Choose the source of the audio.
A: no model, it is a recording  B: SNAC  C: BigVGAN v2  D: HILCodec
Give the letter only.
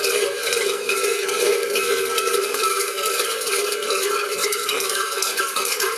B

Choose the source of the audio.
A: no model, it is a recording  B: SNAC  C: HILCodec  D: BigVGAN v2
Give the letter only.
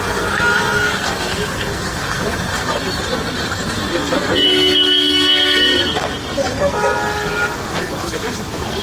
B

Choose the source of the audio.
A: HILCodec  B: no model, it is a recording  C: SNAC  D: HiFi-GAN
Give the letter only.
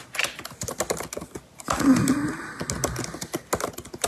B